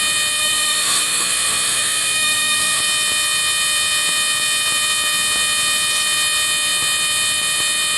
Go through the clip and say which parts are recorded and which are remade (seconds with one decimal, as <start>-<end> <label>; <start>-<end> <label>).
0.0-0.4 recorded; 0.4-2.8 remade; 2.8-8.0 recorded